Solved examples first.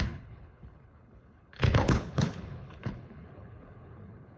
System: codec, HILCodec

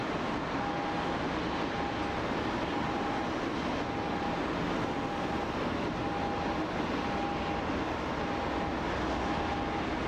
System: none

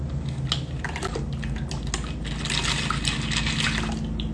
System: none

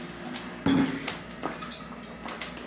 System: none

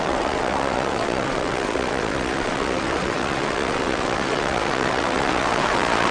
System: vocoder, WaveNeXt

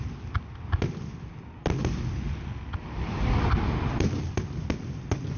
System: none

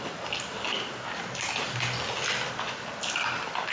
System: none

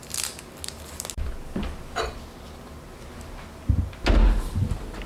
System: none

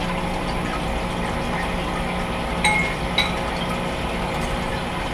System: none